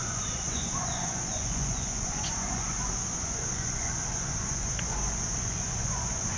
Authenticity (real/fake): fake